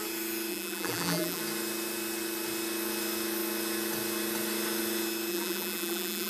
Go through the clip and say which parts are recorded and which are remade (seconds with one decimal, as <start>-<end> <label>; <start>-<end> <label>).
0.0-0.5 recorded; 0.5-1.4 remade; 1.4-5.3 recorded; 5.3-6.3 remade